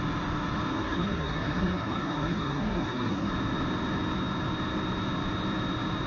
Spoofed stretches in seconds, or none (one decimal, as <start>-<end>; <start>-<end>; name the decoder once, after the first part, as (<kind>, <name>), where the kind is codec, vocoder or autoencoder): 0.7-3.3 (codec, SNAC)